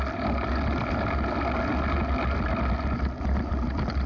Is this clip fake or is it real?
real